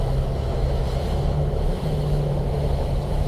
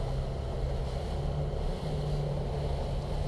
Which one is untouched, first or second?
second